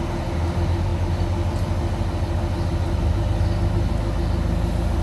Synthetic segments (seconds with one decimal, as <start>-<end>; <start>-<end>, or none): none